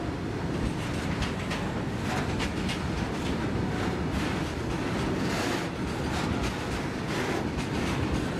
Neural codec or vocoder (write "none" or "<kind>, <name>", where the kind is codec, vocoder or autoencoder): none